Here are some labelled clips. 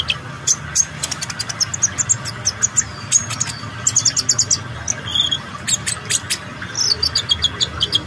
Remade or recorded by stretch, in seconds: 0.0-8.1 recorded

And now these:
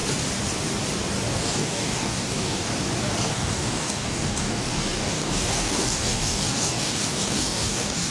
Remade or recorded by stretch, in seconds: 0.0-1.3 recorded; 1.3-2.7 remade; 2.7-3.3 recorded; 3.3-8.1 remade

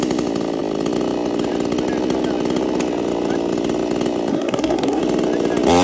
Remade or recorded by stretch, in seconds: 0.0-4.3 recorded; 4.3-5.0 remade; 5.0-5.8 recorded